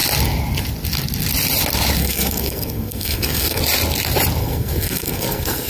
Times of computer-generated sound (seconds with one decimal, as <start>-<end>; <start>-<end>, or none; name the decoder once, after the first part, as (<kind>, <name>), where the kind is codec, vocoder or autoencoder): 2.0-3.6 (codec, SNAC); 4.4-5.7